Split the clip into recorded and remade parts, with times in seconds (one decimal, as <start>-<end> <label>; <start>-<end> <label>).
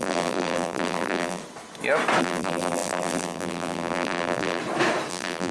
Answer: 0.0-1.4 remade; 1.4-2.2 recorded; 2.2-4.6 remade; 4.6-5.1 recorded; 5.1-5.5 remade